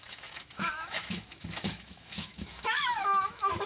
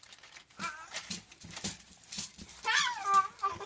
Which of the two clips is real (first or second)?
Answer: second